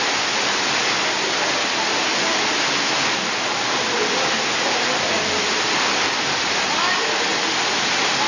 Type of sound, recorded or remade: recorded